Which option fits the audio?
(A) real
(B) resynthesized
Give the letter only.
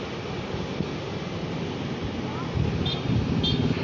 A